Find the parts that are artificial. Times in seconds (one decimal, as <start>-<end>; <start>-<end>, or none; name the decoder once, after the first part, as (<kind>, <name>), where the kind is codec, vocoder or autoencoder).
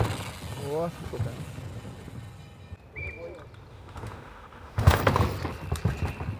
3.7-5.0 (autoencoder, DAC-VAE)